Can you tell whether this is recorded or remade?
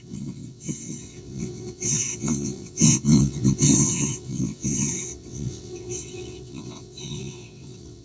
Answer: remade